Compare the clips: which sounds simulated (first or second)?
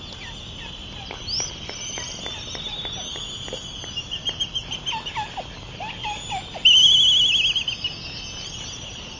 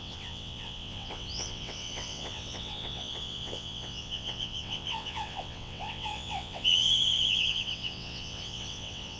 second